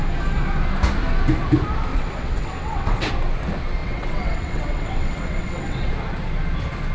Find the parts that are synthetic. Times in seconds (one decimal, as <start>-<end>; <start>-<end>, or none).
1.9-3.1; 3.8-5.9